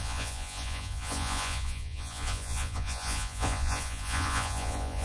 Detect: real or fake fake